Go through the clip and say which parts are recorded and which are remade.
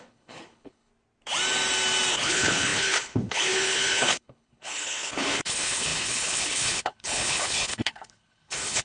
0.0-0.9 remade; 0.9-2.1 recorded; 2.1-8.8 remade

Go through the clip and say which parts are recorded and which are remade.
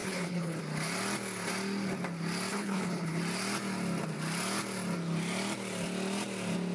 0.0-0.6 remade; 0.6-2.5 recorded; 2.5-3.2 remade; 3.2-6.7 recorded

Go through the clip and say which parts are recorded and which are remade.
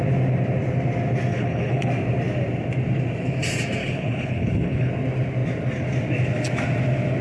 0.0-1.3 recorded; 1.3-1.9 remade; 1.9-3.8 recorded; 3.8-4.9 remade; 4.9-7.2 recorded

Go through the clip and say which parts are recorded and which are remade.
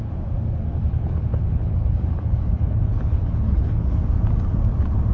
0.0-0.9 recorded; 0.9-4.0 remade; 4.0-5.1 recorded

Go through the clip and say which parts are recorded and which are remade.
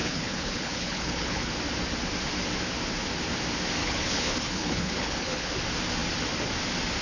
0.0-1.5 remade; 1.5-3.8 recorded; 3.8-5.5 remade; 5.5-7.0 recorded